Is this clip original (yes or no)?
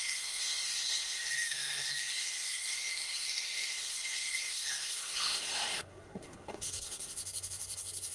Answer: no